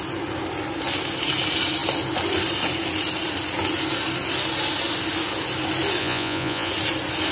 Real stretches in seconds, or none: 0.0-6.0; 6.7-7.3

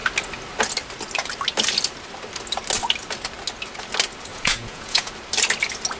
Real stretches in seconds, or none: 0.0-4.3; 5.1-6.0

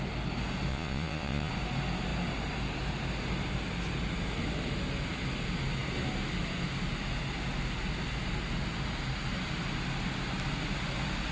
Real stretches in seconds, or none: 0.0-0.7; 1.5-11.3

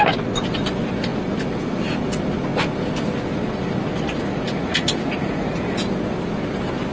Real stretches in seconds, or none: 0.0-4.3; 5.9-6.9

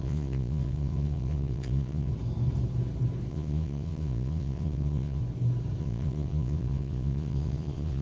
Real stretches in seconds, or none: 2.1-3.3; 5.2-5.8